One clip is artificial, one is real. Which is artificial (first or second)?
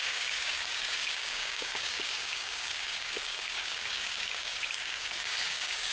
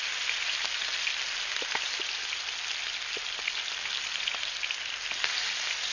first